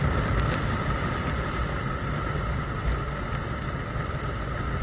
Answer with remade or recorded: recorded